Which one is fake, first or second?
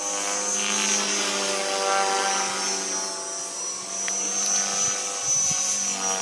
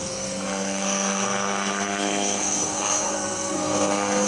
second